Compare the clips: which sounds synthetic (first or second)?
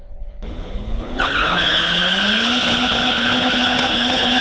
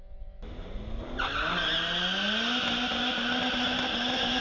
first